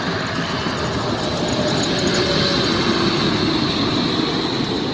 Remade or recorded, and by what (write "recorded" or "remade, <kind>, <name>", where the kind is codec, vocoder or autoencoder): recorded